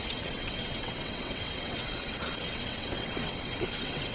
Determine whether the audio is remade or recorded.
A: remade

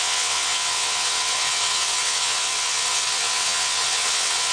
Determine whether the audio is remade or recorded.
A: remade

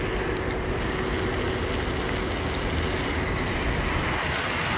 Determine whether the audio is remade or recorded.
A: recorded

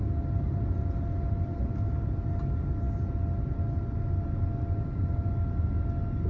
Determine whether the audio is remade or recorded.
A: recorded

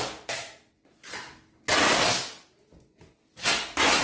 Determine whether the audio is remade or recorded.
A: recorded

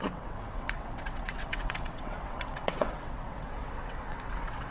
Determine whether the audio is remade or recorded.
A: remade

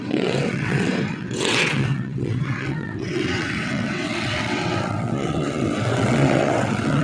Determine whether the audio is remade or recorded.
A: remade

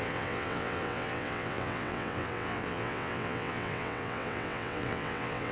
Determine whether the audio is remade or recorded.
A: remade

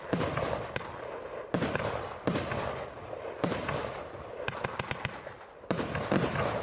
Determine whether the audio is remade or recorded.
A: recorded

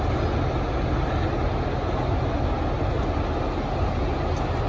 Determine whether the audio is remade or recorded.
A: recorded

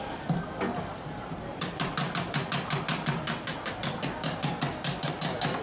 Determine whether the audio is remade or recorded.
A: recorded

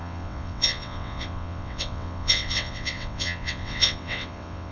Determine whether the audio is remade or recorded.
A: remade